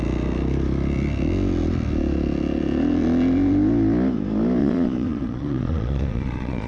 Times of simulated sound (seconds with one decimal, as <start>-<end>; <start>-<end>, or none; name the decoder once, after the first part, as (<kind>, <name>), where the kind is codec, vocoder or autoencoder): 4.6-6.7 (vocoder, Vocos)